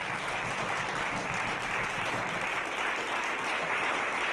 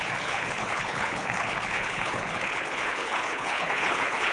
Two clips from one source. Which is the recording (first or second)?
first